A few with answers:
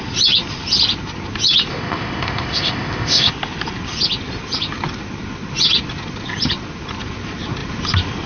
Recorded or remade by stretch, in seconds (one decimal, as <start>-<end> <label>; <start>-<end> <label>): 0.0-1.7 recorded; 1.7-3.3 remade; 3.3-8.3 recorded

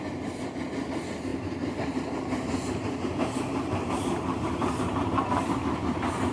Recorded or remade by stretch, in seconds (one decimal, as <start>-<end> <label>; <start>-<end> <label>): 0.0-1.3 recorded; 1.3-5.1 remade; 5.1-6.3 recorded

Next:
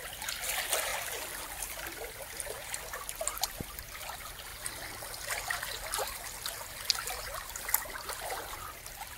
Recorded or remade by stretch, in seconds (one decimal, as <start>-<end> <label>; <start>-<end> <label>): 0.0-9.2 recorded

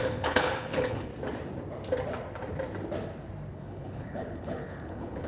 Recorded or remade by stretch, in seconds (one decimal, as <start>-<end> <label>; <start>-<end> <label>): 0.0-1.1 remade; 1.1-3.5 recorded; 3.5-5.3 remade

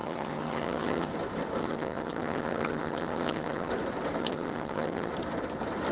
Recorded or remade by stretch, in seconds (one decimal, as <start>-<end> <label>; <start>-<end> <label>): 0.0-1.1 remade; 1.1-1.6 recorded; 1.6-3.7 remade; 3.7-4.2 recorded; 4.2-5.1 remade; 5.1-5.9 recorded

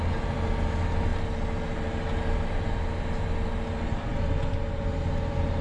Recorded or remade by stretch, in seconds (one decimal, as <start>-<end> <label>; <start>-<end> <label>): 0.0-5.6 recorded

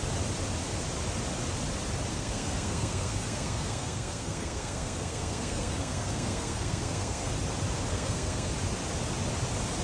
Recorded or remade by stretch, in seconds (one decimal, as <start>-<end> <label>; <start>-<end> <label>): 0.0-2.1 recorded; 2.1-7.3 remade; 7.3-7.9 recorded; 7.9-8.5 remade; 8.5-9.8 recorded